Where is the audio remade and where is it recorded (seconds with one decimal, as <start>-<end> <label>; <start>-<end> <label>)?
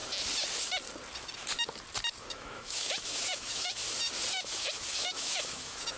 0.0-2.2 recorded; 2.2-3.8 remade; 3.8-4.3 recorded; 4.3-6.0 remade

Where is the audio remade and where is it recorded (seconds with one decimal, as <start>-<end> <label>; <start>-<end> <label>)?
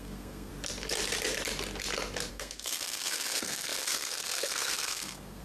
0.0-0.5 remade; 0.5-2.3 recorded; 2.3-5.4 remade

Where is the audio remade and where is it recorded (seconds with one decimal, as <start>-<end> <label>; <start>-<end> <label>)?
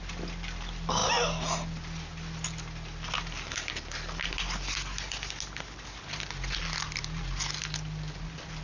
0.0-8.6 recorded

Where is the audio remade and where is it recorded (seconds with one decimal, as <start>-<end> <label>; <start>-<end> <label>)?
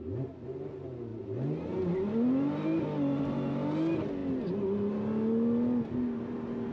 0.0-6.7 recorded